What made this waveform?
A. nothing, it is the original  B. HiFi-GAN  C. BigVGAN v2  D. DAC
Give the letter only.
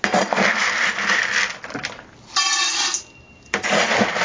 A